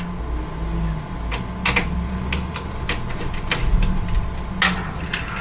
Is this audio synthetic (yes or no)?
no